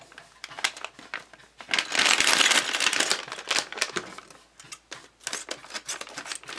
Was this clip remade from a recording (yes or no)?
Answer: no